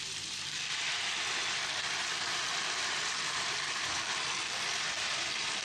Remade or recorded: remade